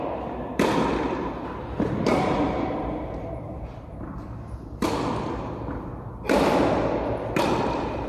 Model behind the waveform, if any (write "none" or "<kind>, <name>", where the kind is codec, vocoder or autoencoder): none